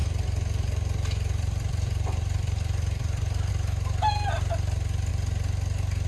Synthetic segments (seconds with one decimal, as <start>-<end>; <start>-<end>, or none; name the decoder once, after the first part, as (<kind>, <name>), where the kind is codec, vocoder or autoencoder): 0.0-3.5 (vocoder, BigVGAN v2)